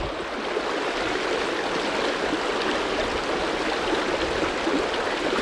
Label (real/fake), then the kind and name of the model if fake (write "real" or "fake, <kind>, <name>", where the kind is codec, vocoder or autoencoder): real